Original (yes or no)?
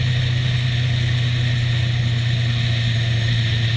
yes